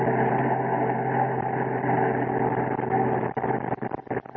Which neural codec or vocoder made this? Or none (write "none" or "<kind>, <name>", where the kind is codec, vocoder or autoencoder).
none